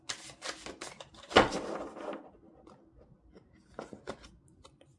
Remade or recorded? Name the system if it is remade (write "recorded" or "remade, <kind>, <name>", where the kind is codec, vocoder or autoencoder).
recorded